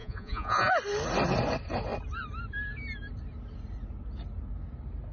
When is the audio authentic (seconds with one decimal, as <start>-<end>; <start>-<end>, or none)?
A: 0.7-5.1